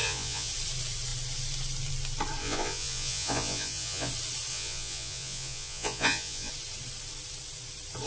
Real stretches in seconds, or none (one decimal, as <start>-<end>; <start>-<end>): 0.5-2.4; 4.1-4.5; 6.5-8.1